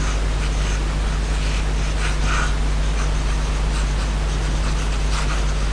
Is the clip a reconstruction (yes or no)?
no